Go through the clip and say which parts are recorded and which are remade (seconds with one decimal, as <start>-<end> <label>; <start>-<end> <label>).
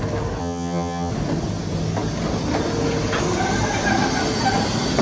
0.0-0.4 recorded; 0.4-1.1 remade; 1.1-5.0 recorded